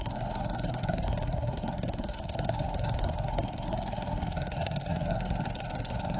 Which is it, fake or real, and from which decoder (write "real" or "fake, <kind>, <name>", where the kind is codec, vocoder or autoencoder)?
fake, codec, SNAC